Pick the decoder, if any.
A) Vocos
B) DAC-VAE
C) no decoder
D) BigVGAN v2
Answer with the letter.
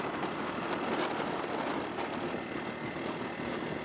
D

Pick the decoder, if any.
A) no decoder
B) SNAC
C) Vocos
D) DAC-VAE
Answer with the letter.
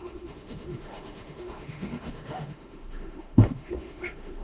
D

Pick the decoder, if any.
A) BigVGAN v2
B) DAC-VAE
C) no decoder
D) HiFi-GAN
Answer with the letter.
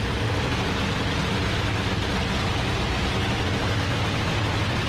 C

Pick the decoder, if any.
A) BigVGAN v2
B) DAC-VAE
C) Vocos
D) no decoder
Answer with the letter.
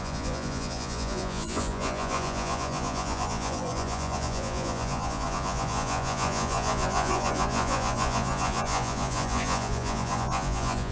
C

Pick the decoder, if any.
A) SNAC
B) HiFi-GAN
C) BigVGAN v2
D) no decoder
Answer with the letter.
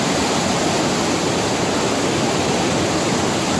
D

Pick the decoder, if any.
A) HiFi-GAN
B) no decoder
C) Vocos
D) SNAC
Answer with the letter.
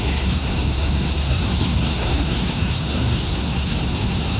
D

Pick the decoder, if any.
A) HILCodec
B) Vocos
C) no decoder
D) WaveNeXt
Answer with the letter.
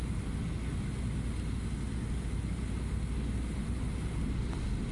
C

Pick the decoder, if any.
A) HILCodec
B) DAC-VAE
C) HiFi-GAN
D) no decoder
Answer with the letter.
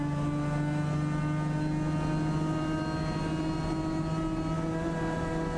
D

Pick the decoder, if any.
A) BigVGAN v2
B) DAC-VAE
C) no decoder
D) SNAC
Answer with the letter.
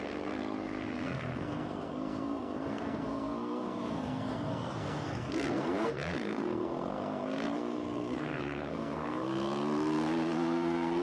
D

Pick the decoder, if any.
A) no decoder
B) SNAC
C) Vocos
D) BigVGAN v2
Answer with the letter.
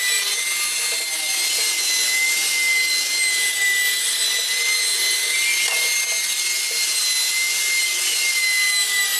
A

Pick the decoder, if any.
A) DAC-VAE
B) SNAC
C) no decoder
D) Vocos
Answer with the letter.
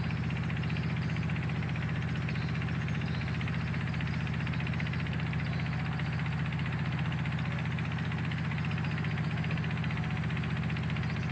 C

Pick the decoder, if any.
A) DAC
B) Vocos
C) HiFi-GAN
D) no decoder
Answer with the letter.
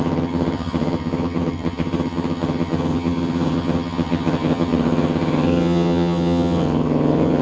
C